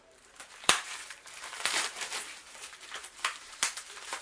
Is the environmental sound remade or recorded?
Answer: remade